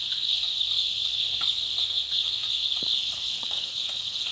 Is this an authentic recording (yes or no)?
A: no